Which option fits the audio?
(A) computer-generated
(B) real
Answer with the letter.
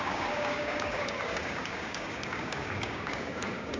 A